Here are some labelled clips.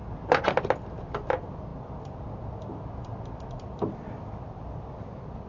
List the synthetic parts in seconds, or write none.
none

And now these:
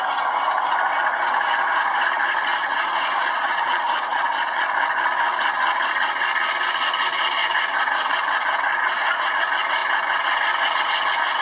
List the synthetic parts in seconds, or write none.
2.5-4.7; 8.7-9.3

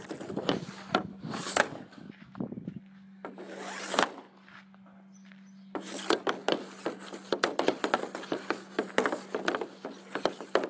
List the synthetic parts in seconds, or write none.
1.1-2.1

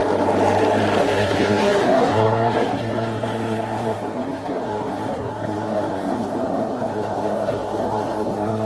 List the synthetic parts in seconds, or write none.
1.0-8.7